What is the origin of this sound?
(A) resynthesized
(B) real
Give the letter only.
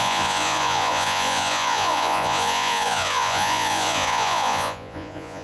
A